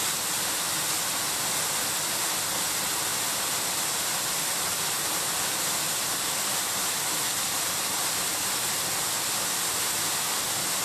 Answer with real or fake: real